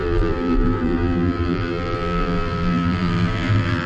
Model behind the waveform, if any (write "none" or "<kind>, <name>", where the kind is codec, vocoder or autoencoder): vocoder, BigVGAN v2